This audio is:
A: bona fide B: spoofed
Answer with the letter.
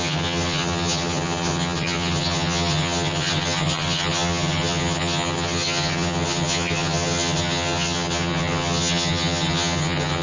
B